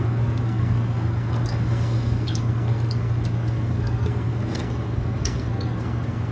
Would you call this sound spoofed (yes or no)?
yes